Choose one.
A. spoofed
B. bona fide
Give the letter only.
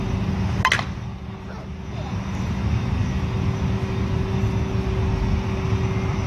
B